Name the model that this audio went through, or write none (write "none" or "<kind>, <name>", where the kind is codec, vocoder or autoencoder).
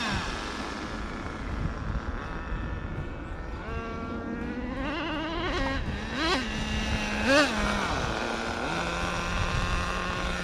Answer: none